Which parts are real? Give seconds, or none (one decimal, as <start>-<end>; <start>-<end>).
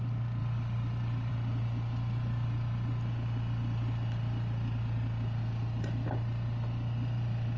0.0-7.6